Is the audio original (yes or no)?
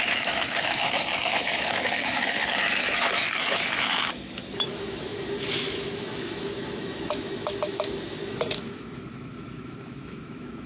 no